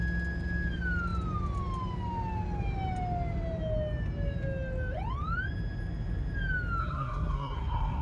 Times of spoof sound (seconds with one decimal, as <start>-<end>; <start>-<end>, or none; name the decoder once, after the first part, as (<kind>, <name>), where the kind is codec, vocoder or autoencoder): 6.8-8.0 (codec, SNAC)